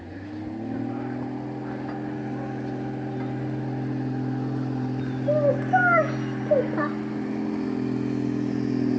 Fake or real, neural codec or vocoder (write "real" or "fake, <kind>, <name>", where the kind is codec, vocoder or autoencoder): real